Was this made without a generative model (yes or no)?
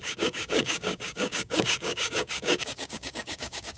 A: no